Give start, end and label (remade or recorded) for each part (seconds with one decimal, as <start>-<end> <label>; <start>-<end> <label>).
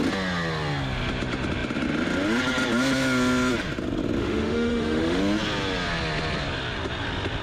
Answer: 0.0-4.2 recorded; 4.2-5.2 remade; 5.2-7.4 recorded